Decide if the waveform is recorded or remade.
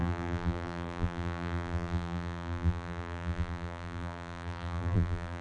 remade